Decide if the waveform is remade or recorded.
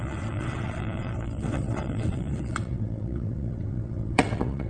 remade